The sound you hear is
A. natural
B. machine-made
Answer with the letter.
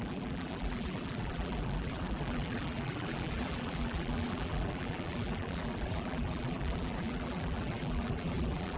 B